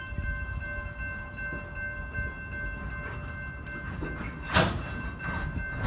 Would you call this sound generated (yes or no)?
no